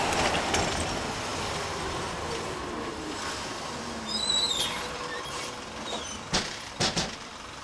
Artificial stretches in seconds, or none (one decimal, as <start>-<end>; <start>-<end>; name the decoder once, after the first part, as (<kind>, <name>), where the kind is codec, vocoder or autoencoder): 0.0-7.6 (vocoder, BigVGAN v2)

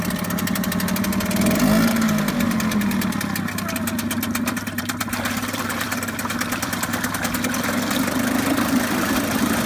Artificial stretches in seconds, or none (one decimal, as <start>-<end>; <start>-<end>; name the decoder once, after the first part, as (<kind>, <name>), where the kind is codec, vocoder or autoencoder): 0.0-1.1 (vocoder, BigVGAN v2); 4.8-9.7

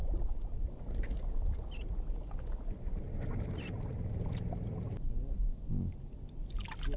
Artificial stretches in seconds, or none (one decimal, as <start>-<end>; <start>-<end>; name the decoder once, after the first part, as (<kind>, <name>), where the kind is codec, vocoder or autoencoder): 3.9-5.1 (vocoder, BigVGAN v2)

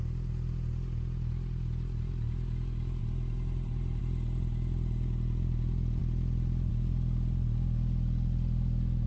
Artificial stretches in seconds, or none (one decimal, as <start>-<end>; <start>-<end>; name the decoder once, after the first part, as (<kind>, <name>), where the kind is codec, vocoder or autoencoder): 3.0-4.0 (vocoder, BigVGAN v2)

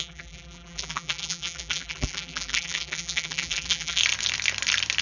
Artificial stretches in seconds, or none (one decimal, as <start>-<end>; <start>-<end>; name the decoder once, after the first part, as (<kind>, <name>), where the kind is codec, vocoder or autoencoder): 0.0-4.0 (vocoder, BigVGAN v2)

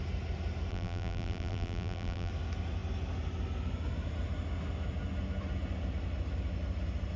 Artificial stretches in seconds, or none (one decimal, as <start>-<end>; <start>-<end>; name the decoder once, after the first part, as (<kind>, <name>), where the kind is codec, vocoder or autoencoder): 0.7-2.3 (vocoder, BigVGAN v2)

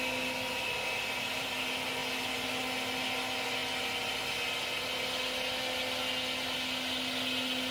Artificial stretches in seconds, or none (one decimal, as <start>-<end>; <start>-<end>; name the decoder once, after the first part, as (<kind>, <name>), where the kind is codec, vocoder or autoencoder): 0.5-1.6 (vocoder, BigVGAN v2)